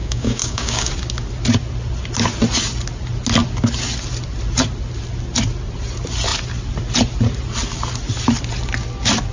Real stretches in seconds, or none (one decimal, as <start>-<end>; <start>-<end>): 0.9-9.3